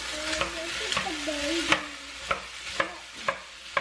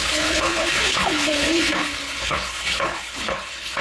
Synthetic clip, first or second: second